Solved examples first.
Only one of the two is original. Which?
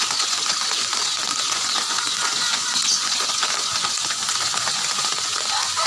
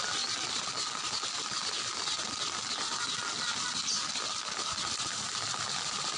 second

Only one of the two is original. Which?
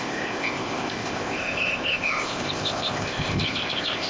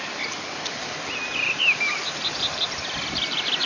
second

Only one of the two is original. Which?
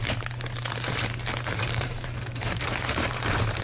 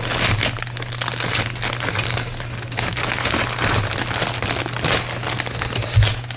second